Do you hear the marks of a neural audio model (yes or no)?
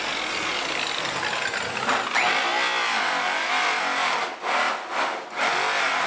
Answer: no